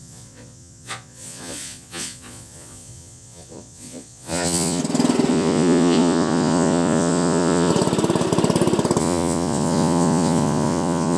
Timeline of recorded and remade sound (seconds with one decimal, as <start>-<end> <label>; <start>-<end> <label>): 0.0-4.8 remade; 4.8-5.3 recorded; 5.3-7.7 remade; 7.7-9.0 recorded; 9.0-11.2 remade